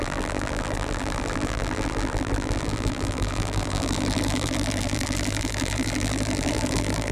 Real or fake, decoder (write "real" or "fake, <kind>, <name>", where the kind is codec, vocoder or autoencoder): fake, vocoder, BigVGAN v2